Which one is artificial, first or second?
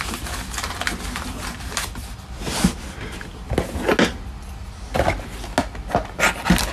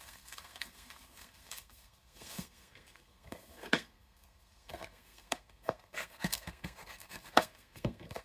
second